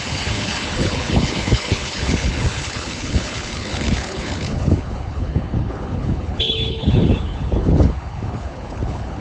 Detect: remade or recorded remade